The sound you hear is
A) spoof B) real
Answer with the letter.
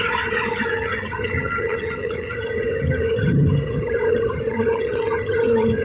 A